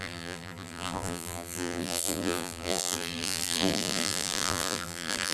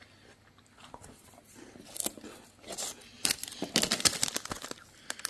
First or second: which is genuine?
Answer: second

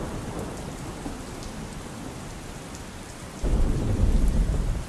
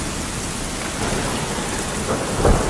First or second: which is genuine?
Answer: second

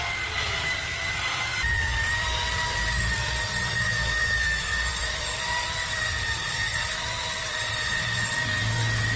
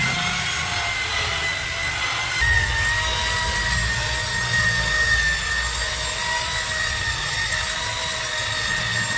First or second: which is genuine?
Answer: second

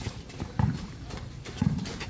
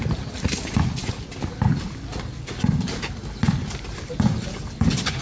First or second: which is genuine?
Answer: second